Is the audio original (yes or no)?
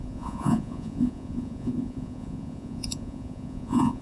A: no